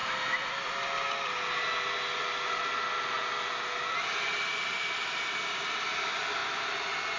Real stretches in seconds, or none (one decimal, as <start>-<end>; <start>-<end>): 0.0-7.2

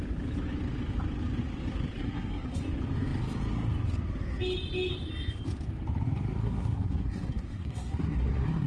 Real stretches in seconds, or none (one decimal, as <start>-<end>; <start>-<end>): 0.0-2.0; 2.6-6.4

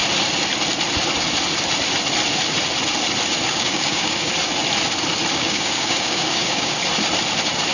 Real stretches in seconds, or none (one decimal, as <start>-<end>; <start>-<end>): 0.0-3.5; 4.3-5.3; 6.8-7.7

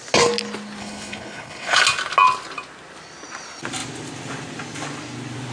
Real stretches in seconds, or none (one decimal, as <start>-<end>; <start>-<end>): 0.0-0.8; 1.8-5.5

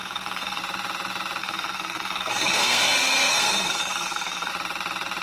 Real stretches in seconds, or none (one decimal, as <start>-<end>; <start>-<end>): 0.6-1.4; 4.5-5.2

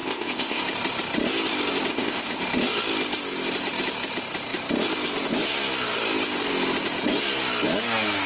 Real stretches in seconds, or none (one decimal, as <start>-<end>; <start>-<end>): 0.6-1.9; 2.4-8.3

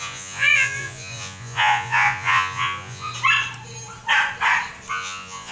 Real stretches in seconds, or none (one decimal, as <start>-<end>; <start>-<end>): 3.1-4.9

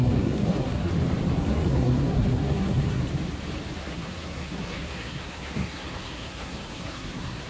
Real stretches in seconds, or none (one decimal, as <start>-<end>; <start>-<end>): 0.9-1.4; 3.0-3.8